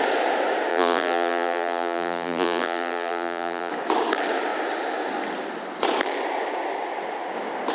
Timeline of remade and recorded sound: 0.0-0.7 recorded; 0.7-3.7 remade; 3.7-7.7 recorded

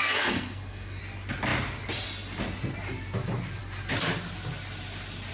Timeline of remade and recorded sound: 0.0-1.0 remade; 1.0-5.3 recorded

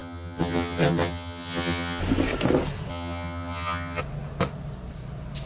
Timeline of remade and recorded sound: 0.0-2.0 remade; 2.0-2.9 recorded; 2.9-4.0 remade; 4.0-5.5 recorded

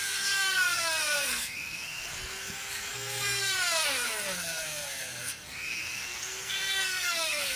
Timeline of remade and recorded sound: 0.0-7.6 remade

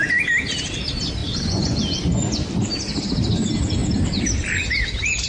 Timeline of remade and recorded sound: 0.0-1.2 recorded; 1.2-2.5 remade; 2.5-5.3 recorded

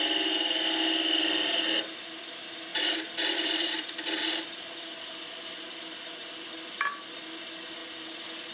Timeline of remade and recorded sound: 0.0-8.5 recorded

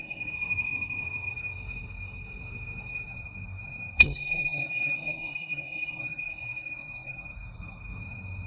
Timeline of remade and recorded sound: 0.0-8.5 remade

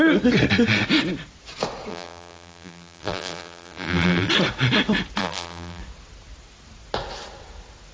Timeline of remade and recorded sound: 0.0-1.9 recorded; 1.9-4.3 remade; 4.3-5.2 recorded; 5.2-5.8 remade; 5.8-7.9 recorded